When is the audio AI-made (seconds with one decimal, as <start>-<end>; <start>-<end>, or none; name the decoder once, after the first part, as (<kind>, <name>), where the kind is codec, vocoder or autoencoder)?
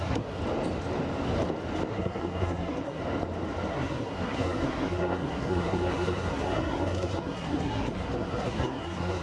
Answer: 0.0-0.4 (codec, SNAC); 1.9-3.0; 3.7-9.2